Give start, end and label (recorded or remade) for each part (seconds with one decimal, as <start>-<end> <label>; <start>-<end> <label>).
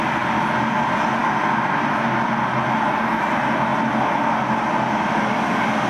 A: 0.0-5.9 recorded